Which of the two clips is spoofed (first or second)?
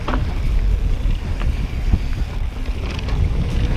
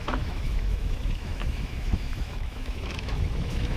second